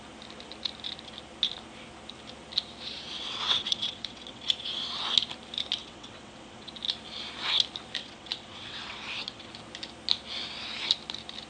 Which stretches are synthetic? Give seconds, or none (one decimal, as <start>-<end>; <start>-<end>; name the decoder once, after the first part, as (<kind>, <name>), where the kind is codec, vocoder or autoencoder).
3.2-4.5 (vocoder, WaveNeXt); 5.8-6.7; 8.0-9.5